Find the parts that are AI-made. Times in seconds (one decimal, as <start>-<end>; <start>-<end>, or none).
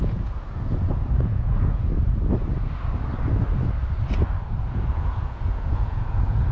0.0-1.9; 4.6-6.5